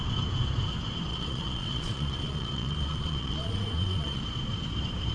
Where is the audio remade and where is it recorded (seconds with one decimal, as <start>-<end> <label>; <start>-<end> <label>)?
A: 0.0-1.1 recorded; 1.1-4.2 remade; 4.2-5.1 recorded